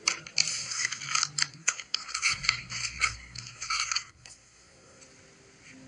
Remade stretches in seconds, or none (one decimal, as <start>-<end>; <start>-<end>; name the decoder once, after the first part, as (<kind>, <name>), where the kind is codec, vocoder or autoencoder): 0.5-1.0 (codec, SNAC); 1.5-5.0